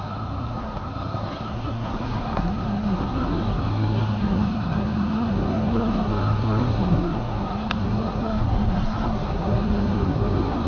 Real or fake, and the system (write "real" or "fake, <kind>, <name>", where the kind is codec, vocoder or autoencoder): fake, codec, SNAC